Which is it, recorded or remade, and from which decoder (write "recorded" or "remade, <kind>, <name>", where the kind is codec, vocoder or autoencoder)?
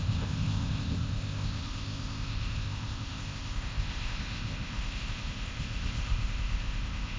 remade, codec, ZipCodec